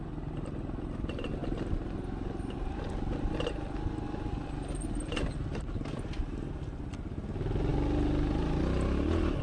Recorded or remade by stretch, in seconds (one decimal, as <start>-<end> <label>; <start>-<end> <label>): 0.0-9.4 recorded